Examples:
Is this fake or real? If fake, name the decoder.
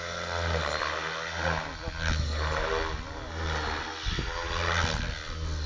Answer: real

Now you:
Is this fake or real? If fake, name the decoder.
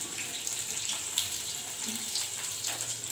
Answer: fake, vocoder, BigVGAN v2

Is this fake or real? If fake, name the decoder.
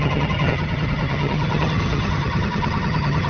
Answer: fake, vocoder, HiFi-GAN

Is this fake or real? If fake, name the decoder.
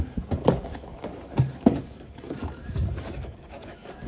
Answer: fake, codec, DAC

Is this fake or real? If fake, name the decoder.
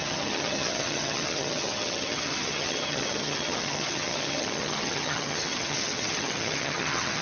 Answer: fake, vocoder, HiFi-GAN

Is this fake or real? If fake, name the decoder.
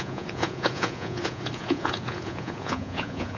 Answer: fake, vocoder, Vocos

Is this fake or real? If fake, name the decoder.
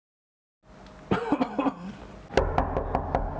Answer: real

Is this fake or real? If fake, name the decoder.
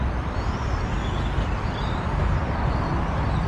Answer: real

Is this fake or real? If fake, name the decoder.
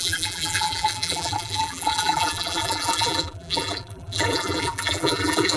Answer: fake, vocoder, BigVGAN v2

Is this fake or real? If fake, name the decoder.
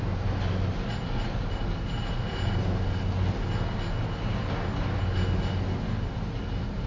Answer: real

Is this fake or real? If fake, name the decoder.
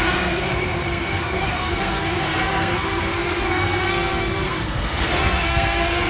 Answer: fake, codec, SNAC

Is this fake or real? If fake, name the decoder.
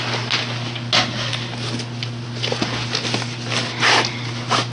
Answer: real